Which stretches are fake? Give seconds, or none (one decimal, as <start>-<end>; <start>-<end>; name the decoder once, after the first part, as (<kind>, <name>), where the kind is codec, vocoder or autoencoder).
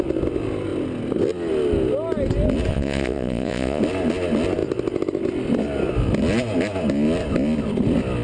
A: 2.7-3.8 (vocoder, Vocos)